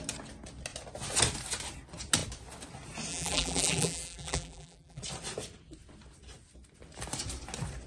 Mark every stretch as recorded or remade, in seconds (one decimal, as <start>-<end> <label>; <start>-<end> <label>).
0.0-3.1 recorded; 3.1-5.0 remade; 5.0-7.9 recorded